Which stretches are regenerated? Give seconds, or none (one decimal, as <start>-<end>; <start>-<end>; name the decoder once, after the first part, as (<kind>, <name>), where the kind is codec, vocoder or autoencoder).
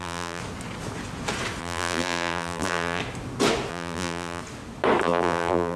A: 0.0-0.4 (vocoder, BigVGAN v2); 1.6-3.0; 3.7-4.4; 5.0-5.8